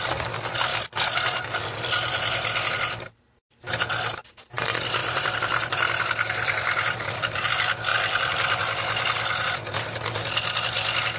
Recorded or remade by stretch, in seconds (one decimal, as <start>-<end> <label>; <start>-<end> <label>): 0.0-5.0 recorded; 5.0-7.5 remade; 7.5-7.9 recorded; 7.9-9.7 remade; 9.7-11.2 recorded